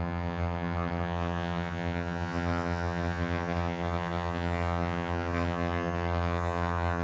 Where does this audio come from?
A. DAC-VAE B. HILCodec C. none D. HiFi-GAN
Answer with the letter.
D